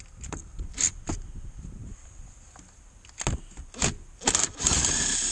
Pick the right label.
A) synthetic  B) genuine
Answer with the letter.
B